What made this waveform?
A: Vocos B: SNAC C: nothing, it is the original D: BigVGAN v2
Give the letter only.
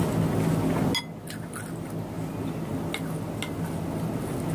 C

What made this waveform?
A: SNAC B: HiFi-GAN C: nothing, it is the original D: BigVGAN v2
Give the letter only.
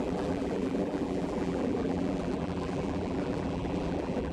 D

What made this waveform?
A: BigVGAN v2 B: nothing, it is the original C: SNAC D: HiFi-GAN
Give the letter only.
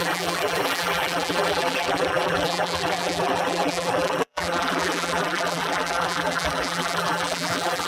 A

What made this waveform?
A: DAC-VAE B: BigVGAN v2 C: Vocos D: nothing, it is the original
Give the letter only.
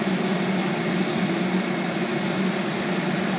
D